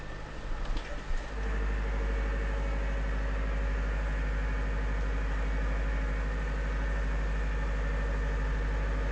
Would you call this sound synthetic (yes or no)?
no